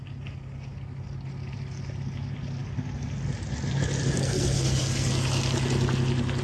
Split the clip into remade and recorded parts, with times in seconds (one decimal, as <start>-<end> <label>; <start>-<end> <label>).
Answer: 0.0-4.2 recorded; 4.2-5.1 remade; 5.1-6.4 recorded

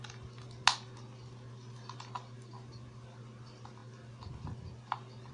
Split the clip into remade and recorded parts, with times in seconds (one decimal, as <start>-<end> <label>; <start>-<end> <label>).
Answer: 0.0-5.3 recorded

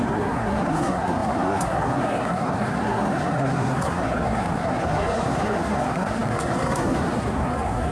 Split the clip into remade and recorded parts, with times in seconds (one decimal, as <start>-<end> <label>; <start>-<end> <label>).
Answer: 0.0-7.9 remade